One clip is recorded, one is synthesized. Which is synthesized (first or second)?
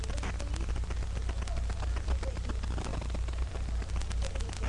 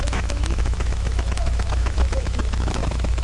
second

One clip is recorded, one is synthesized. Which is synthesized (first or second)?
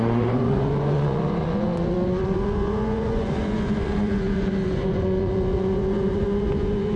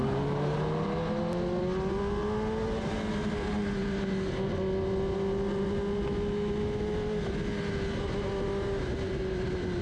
first